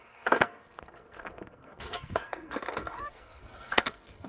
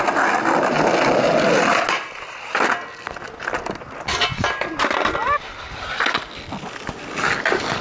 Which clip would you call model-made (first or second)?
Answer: first